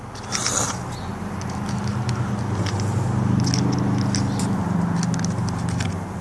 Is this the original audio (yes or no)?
yes